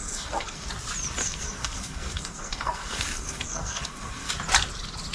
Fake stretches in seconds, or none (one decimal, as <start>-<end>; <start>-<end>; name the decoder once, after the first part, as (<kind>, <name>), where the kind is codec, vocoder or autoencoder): 0.0-0.7 (codec, SNAC); 1.2-4.3